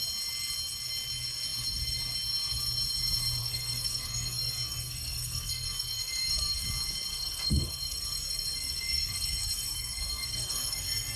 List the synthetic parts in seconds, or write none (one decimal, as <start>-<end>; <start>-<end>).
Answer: 3.4-6.6; 7.1-11.2